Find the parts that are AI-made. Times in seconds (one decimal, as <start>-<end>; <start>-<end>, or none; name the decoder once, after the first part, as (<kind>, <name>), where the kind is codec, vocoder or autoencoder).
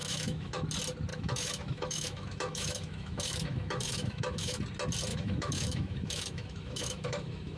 0.0-0.7 (autoencoder, DAC-VAE); 1.1-4.6; 5.1-7.6